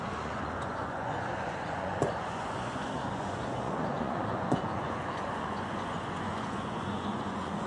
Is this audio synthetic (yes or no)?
yes